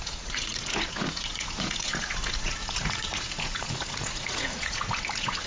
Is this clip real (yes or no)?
no